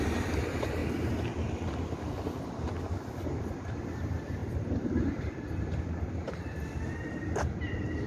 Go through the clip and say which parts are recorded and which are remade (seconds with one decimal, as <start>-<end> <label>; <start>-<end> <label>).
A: 0.0-0.8 remade; 0.8-2.0 recorded; 2.0-8.1 remade